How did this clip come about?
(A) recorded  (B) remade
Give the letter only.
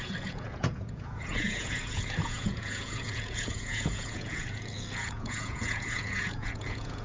B